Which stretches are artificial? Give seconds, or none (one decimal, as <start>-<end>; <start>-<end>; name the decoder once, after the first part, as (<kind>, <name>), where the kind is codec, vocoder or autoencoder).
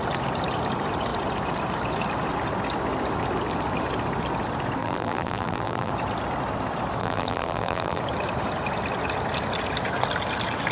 4.8-5.9 (vocoder, BigVGAN v2); 7.0-8.0